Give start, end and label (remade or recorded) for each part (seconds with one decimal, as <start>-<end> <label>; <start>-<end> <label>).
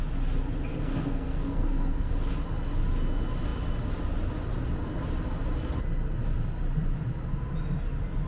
0.0-0.7 recorded; 0.7-2.1 remade; 2.1-8.3 recorded